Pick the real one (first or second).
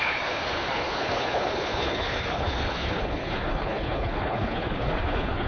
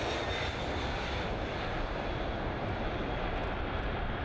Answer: second